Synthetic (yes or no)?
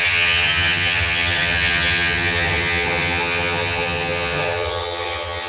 yes